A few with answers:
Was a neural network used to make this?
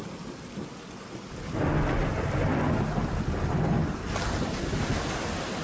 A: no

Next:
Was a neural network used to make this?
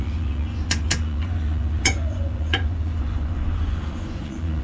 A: yes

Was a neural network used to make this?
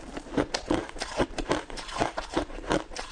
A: yes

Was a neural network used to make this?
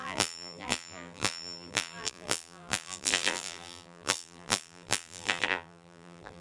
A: yes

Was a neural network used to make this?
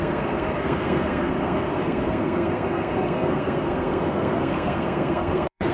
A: yes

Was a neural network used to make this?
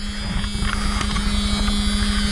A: no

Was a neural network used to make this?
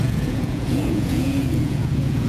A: yes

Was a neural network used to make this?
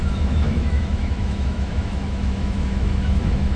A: yes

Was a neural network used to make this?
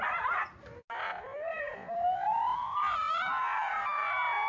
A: no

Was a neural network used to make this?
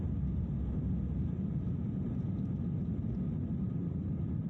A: no